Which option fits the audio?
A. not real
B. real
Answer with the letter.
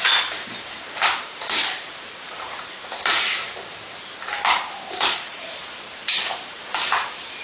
A